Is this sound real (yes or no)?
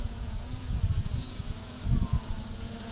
no